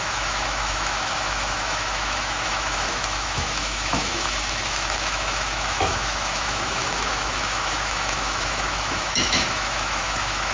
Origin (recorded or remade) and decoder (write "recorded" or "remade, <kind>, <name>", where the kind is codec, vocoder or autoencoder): remade, autoencoder, DAC-VAE